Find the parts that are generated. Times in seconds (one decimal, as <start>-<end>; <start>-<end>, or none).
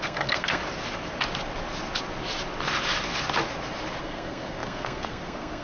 0.0-0.6; 4.0-5.6